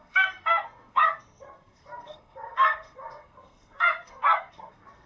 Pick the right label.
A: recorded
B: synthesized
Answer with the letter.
B